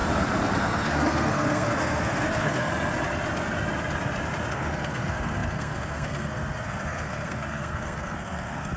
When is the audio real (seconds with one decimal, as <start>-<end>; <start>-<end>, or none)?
0.0-0.6; 2.7-4.5